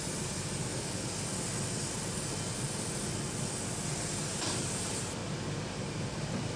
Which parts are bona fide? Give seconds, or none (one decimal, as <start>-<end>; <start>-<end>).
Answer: 0.7-4.0; 5.2-6.1